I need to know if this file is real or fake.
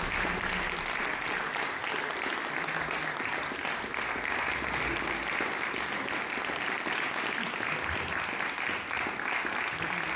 real